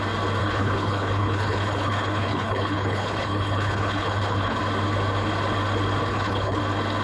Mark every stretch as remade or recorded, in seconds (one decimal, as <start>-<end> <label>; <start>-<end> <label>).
0.0-0.4 recorded; 0.4-4.6 remade; 4.6-6.1 recorded; 6.1-6.6 remade; 6.6-7.0 recorded

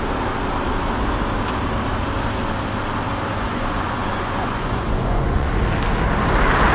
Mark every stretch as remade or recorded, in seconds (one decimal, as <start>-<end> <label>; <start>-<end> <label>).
0.0-3.3 recorded; 3.3-5.5 remade; 5.5-6.7 recorded

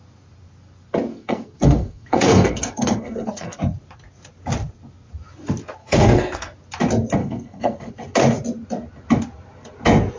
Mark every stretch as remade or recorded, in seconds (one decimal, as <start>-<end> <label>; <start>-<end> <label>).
0.0-1.1 recorded; 1.1-3.6 remade; 3.6-5.8 recorded; 5.8-6.5 remade; 6.5-7.2 recorded; 7.2-7.9 remade; 7.9-10.2 recorded

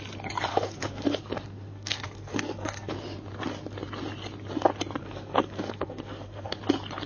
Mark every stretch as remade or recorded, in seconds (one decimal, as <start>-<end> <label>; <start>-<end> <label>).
0.0-0.5 recorded; 0.5-2.9 remade; 2.9-5.0 recorded; 5.0-6.6 remade; 6.6-7.1 recorded

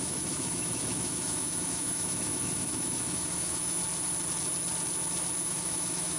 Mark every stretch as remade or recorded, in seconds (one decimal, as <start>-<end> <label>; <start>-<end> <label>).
0.0-3.8 remade; 3.8-5.4 recorded; 5.4-6.2 remade